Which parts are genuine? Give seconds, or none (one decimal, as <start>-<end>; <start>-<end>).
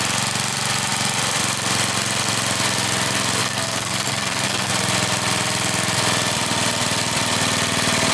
0.0-3.4; 4.7-8.1